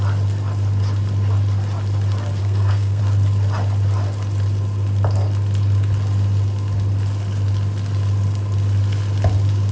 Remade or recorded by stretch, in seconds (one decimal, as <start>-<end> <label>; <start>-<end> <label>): 0.0-2.4 recorded; 2.4-3.0 remade; 3.0-9.7 recorded

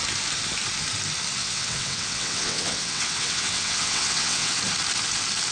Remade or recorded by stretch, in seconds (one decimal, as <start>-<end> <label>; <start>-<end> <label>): 0.0-1.4 recorded; 1.4-4.6 remade; 4.6-5.5 recorded

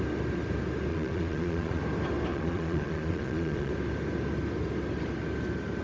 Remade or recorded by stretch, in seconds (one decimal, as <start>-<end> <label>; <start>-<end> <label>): 0.0-0.9 recorded; 0.9-1.8 remade; 1.8-2.3 recorded; 2.3-3.7 remade; 3.7-5.8 recorded

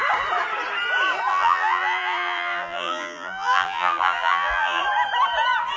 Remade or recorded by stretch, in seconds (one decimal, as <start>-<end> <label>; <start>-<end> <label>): 0.0-1.3 recorded; 1.3-4.8 remade; 4.8-5.8 recorded

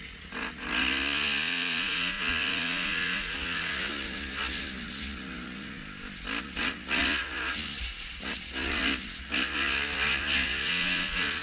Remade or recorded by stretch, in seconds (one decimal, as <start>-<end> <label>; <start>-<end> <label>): 0.0-5.8 remade; 5.8-6.4 recorded; 6.4-11.4 remade

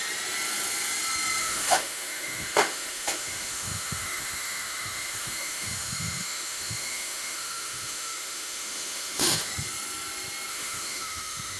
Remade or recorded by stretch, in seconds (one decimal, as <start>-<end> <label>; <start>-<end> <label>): 0.0-1.4 recorded; 1.4-9.5 remade; 9.5-10.5 recorded; 10.5-11.6 remade